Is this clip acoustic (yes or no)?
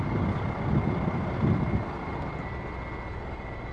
yes